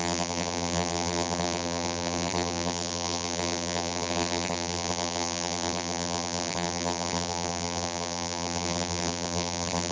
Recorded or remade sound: remade